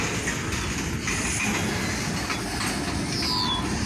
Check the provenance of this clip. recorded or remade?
recorded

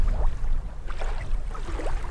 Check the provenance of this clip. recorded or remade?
recorded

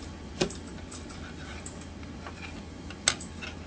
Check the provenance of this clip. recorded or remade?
recorded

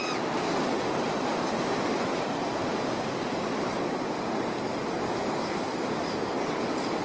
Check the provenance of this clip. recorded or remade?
recorded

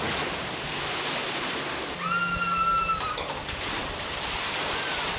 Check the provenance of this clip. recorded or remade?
recorded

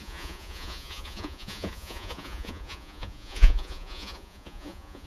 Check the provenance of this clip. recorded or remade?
remade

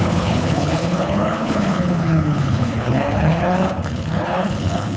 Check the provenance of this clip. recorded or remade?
remade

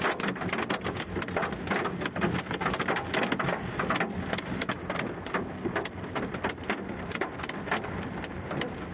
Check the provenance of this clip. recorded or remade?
recorded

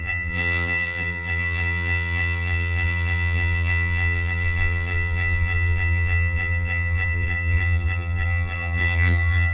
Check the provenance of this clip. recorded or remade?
remade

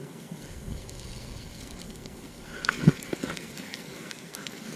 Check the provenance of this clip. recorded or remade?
remade